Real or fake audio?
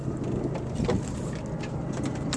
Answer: real